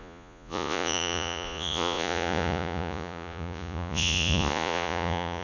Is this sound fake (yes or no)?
yes